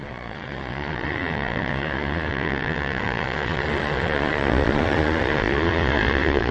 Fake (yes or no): yes